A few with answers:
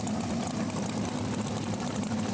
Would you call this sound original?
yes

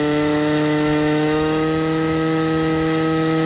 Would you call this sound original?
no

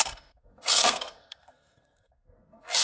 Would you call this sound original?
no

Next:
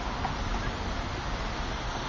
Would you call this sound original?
yes